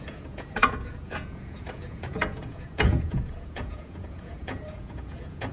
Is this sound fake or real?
fake